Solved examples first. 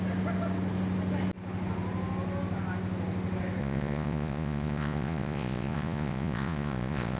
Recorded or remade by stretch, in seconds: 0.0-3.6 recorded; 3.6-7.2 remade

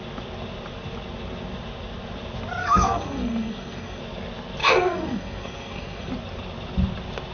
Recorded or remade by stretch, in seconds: 0.0-2.6 recorded; 2.6-4.0 remade; 4.0-4.6 recorded; 4.6-6.1 remade; 6.1-7.3 recorded

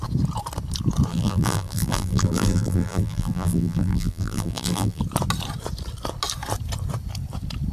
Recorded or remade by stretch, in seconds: 0.0-1.1 recorded; 1.1-5.0 remade; 5.0-7.7 recorded

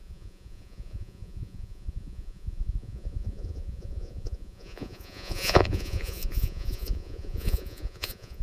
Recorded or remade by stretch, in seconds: 0.0-8.4 remade